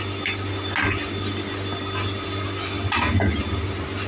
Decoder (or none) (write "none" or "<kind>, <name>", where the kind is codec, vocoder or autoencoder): none